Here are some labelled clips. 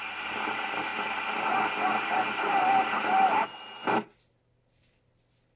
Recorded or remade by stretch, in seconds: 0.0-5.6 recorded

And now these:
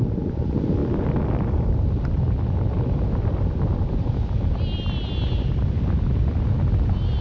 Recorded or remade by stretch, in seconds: 0.0-7.2 recorded

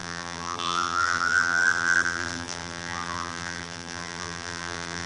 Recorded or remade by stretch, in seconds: 0.0-5.1 remade

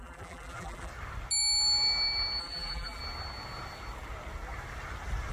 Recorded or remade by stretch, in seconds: 0.0-0.9 remade; 0.9-2.4 recorded; 2.4-3.0 remade; 3.0-5.3 recorded